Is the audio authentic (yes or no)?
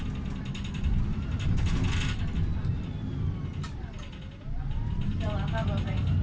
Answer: yes